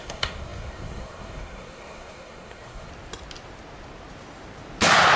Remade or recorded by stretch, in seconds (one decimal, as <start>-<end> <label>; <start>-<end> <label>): 0.0-2.9 remade; 2.9-5.2 recorded